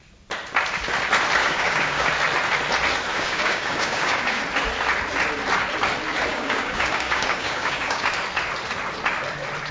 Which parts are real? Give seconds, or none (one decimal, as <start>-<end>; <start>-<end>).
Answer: 0.0-1.4; 2.1-3.1; 4.4-6.3; 8.1-9.7